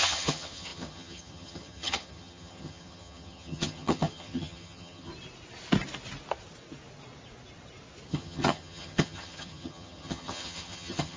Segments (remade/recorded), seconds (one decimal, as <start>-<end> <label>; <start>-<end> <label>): 0.0-5.1 remade; 5.1-8.1 recorded; 8.1-11.2 remade